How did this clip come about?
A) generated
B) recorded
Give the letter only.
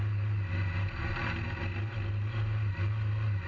B